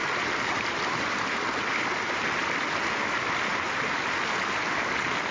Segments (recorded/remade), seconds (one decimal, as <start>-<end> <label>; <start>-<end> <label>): 0.0-5.3 recorded